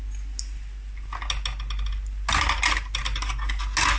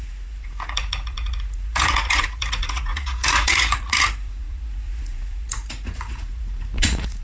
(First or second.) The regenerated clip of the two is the second